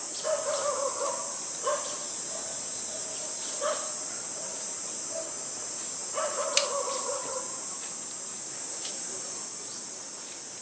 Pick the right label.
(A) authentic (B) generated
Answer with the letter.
A